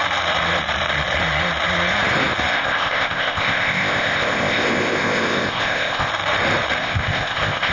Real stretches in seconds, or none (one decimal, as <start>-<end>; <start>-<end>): 0.0-2.5; 6.1-6.8